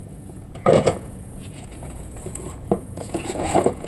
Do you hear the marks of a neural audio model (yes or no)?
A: yes